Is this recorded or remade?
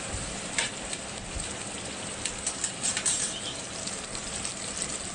recorded